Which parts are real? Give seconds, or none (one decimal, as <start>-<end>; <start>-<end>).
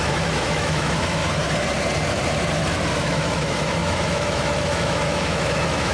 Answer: 1.2-3.0